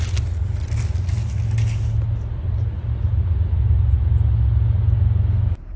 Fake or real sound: real